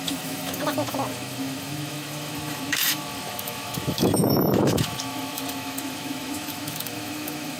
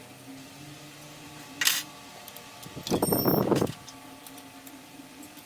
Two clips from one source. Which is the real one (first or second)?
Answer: second